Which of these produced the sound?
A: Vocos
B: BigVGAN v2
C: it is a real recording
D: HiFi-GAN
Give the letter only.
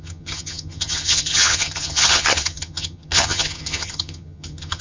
D